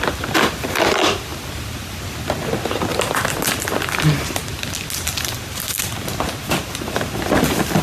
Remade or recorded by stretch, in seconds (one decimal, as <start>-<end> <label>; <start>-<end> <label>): 0.0-7.8 recorded